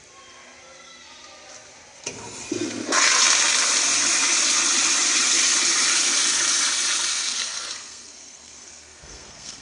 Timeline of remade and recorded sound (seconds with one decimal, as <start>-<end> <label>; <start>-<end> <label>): 0.0-7.1 recorded; 7.1-9.6 remade